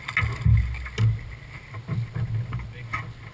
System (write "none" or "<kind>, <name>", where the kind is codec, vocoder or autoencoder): none